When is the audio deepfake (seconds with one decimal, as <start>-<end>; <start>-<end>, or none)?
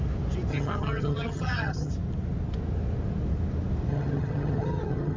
0.5-1.9; 3.9-5.2